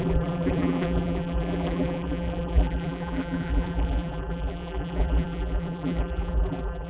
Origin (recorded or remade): remade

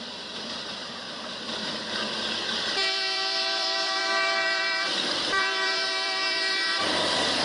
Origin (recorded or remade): remade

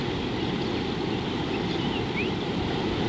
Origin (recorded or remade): recorded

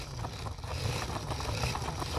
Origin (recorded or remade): recorded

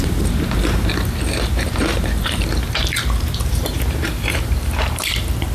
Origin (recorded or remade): remade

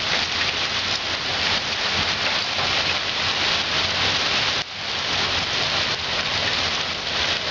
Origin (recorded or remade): recorded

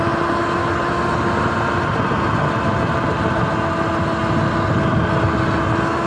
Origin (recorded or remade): recorded